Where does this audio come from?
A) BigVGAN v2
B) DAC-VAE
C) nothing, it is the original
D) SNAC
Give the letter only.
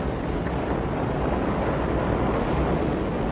C